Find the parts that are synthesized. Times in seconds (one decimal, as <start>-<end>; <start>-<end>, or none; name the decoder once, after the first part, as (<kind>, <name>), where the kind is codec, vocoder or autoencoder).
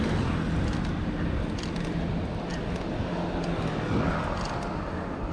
none